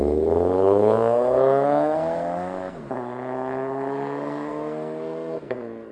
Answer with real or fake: fake